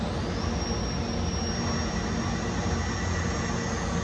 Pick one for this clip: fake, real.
real